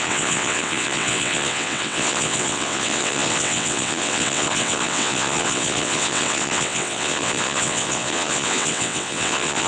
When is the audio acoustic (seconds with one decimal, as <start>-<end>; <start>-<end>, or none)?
none